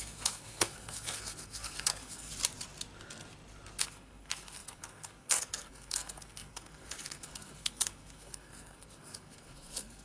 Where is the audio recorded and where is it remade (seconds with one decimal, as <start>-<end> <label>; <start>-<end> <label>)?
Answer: 0.0-2.3 remade; 2.3-3.8 recorded; 3.8-10.0 remade